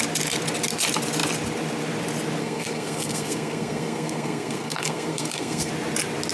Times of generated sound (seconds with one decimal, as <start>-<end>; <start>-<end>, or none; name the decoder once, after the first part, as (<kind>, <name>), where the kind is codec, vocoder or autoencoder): 2.4-5.7 (codec, SNAC)